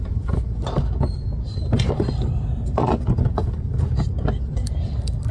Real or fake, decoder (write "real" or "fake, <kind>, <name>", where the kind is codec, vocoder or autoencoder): real